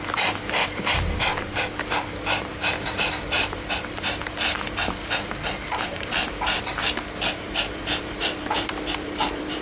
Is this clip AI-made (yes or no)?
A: yes